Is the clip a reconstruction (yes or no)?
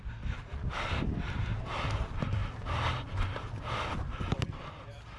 no